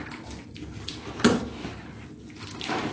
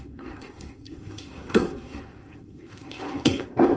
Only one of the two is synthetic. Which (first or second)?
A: second